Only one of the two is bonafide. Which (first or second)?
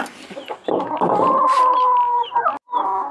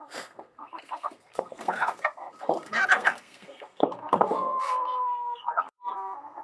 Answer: first